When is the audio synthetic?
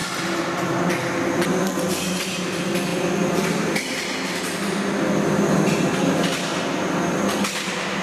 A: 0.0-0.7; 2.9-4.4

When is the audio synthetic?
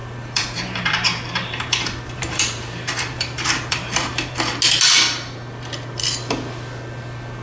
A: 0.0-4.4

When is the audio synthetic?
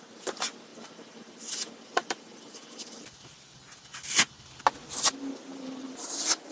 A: 0.7-4.6; 5.5-6.5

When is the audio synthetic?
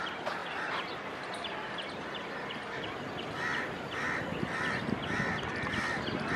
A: none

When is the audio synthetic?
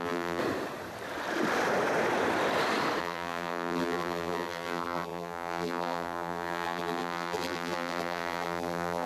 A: 0.0-0.4; 3.0-9.1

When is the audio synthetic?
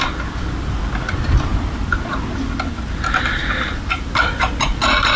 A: none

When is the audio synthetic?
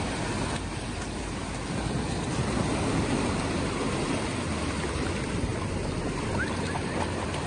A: 0.0-7.5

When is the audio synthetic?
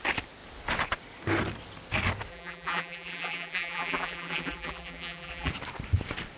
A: 2.3-5.5